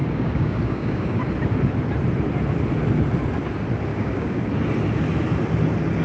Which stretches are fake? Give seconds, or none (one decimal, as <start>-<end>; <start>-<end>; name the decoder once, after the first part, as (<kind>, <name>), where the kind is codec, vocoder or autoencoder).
0.0-1.2 (codec, DAC); 3.9-4.4